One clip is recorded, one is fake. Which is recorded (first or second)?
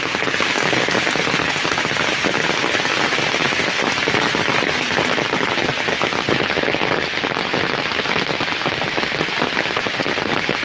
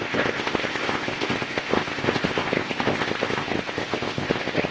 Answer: first